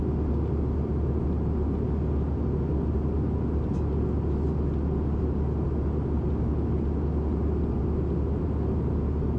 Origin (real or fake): real